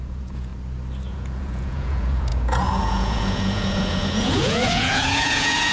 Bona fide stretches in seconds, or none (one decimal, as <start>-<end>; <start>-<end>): 0.5-1.1